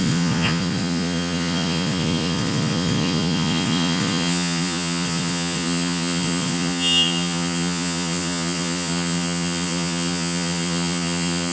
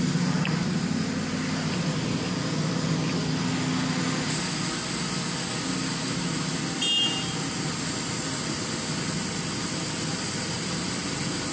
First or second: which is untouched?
second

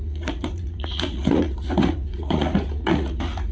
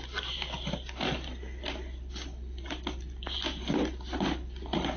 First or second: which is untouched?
second